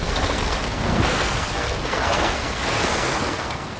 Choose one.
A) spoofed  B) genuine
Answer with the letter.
A